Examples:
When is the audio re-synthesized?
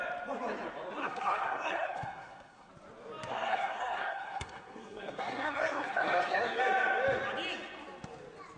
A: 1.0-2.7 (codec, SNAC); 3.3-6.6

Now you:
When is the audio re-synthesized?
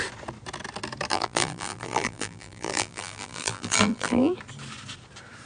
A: 1.1-4.3 (vocoder, BigVGAN v2)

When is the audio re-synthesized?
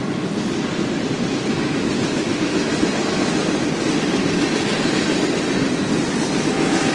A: 1.5-2.7 (autoencoder, DAC-VAE); 6.5-6.9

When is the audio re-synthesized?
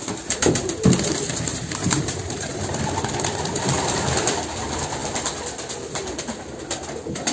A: 1.5-2.8 (vocoder, BigVGAN v2)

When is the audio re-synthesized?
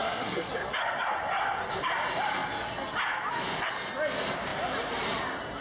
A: 0.0-0.5 (codec, SNAC)